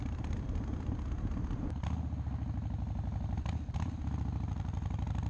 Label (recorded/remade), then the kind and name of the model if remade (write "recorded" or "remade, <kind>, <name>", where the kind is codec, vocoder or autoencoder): recorded